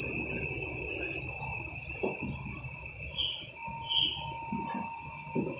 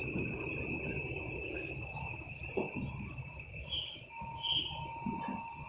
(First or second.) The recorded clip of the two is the first